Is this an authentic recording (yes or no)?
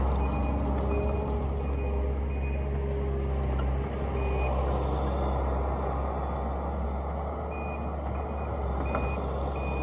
yes